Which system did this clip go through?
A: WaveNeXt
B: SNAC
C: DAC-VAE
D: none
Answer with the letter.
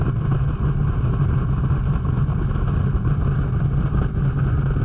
D